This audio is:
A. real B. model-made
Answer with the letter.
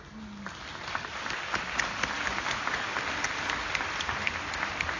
A